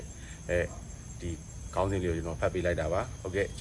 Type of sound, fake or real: real